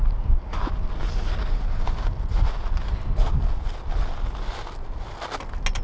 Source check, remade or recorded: recorded